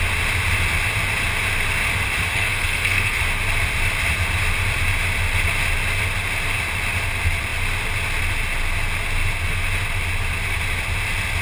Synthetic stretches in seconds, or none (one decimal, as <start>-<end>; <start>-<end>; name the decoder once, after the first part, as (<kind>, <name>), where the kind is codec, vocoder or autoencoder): 2.3-3.2 (codec, SNAC)

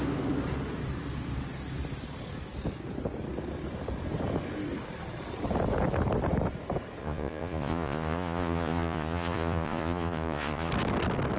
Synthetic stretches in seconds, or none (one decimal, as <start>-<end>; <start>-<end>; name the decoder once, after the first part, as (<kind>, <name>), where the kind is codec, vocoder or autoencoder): 7.0-10.7 (vocoder, Vocos)

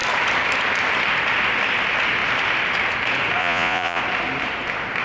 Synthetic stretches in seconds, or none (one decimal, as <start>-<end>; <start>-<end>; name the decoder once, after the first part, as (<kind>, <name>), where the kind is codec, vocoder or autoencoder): 3.4-4.0 (vocoder, Vocos)

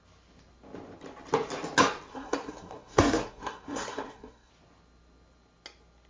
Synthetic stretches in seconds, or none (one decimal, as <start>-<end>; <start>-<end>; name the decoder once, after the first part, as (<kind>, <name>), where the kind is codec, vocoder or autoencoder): 2.1-4.5 (codec, SNAC)

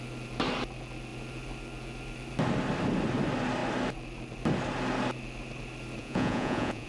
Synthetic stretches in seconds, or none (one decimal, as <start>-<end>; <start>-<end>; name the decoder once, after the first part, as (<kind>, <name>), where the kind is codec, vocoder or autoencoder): 6.0-6.9 (vocoder, Vocos)

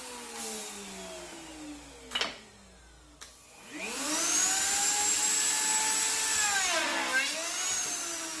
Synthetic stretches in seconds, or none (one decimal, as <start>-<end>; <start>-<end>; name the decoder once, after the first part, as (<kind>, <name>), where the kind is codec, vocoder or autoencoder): none